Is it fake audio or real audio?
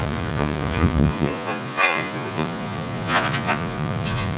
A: fake